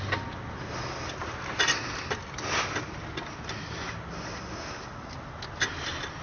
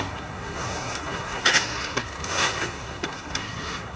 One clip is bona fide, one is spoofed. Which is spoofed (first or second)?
second